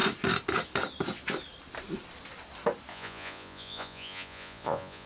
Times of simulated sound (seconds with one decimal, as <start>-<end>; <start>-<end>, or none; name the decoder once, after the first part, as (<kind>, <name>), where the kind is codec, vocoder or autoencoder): 2.9-5.1 (vocoder, Vocos)